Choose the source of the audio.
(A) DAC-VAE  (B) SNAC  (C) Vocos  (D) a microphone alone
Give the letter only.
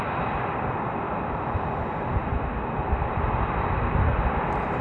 D